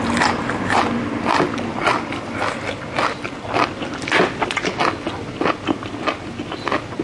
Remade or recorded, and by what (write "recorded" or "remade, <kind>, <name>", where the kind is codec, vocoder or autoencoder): recorded